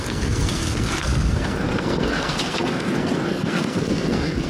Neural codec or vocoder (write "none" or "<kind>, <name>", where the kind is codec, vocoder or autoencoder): codec, SNAC